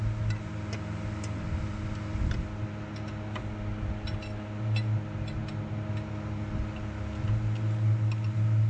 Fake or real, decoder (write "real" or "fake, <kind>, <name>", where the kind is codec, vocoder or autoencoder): real